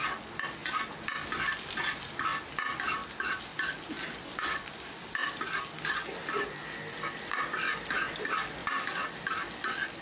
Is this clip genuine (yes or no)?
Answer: yes